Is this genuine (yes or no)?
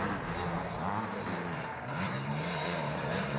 no